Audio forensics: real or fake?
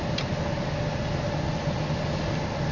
real